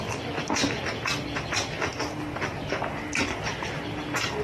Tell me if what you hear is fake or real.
real